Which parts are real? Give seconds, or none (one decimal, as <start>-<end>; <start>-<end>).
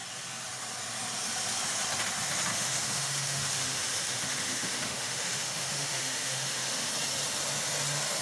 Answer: 0.0-2.5; 6.9-8.2